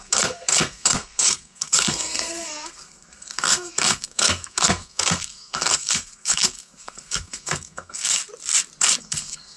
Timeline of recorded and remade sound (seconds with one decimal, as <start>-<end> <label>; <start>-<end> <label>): 0.0-8.2 remade; 8.2-9.0 recorded; 9.0-9.6 remade